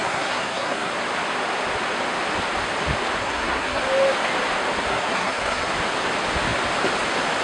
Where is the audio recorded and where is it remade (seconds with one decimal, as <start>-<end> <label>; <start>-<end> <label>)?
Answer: 0.0-0.9 remade; 0.9-3.2 recorded; 3.2-3.8 remade; 3.8-4.9 recorded; 4.9-5.7 remade; 5.7-7.4 recorded